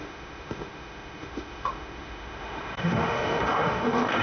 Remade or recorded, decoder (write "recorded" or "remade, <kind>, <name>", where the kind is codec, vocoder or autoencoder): remade, autoencoder, DAC-VAE